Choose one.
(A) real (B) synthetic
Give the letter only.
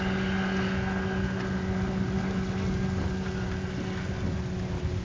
A